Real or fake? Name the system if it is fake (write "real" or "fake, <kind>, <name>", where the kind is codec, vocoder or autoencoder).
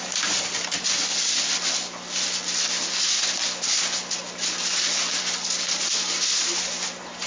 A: real